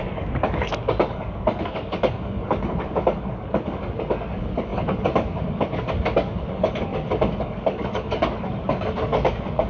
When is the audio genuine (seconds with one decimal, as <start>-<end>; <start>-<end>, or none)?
6.9-7.4